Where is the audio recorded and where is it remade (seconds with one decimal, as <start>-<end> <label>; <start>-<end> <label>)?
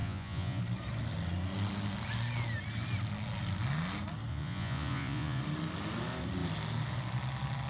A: 0.0-0.6 remade; 0.6-4.3 recorded; 4.3-5.4 remade; 5.4-7.7 recorded